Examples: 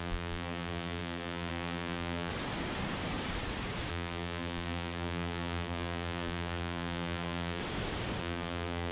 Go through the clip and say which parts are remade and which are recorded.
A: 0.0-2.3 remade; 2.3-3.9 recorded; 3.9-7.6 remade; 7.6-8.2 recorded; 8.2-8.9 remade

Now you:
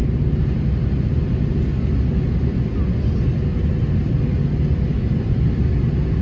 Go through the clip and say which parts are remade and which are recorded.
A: 0.0-3.5 recorded; 3.5-4.3 remade; 4.3-4.9 recorded; 4.9-5.7 remade; 5.7-6.2 recorded

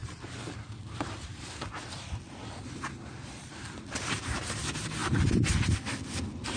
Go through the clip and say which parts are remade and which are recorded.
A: 0.0-4.0 remade; 4.0-5.0 recorded; 5.0-5.9 remade; 5.9-6.6 recorded